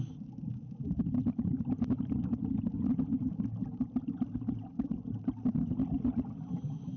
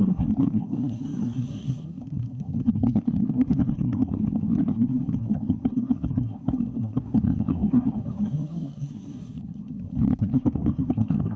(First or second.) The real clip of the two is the first